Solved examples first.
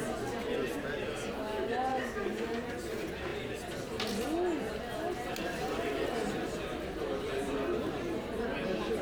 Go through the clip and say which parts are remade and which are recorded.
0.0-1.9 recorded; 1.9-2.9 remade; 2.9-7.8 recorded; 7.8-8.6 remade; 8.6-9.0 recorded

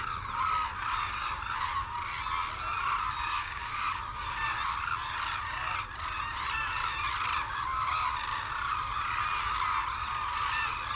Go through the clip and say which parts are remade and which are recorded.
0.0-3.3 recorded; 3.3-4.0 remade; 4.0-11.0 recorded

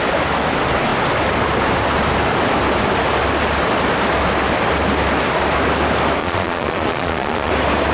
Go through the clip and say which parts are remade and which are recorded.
0.0-6.2 recorded; 6.2-7.5 remade; 7.5-7.9 recorded